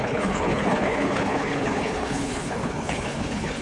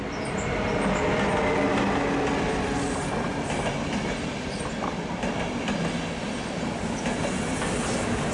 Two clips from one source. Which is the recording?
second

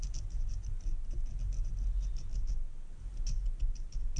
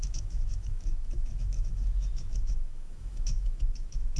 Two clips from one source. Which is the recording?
first